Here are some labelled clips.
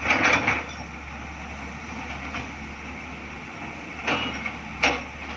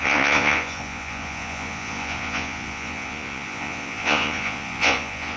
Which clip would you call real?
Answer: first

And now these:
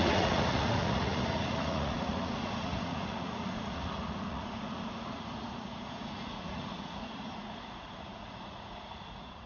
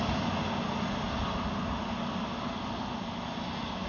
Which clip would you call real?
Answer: second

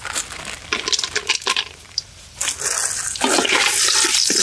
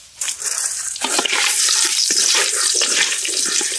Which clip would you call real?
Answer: first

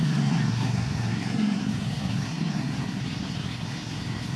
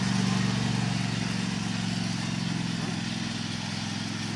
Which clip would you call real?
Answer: second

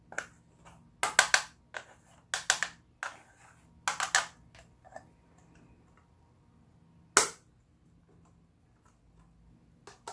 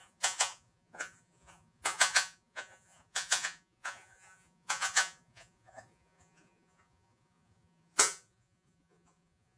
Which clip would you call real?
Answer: first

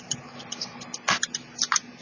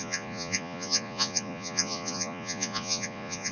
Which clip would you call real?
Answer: first